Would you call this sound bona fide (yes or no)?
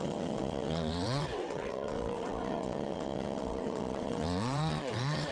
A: no